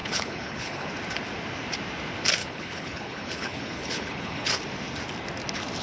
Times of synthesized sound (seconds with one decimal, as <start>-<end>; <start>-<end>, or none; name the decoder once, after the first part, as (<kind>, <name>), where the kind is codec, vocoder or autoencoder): 0.0-0.9 (codec, HILCodec); 2.4-4.5